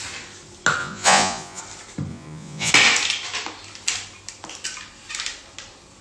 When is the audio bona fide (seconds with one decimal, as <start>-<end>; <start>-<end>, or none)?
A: 0.0-0.8; 1.6-2.1; 2.7-6.0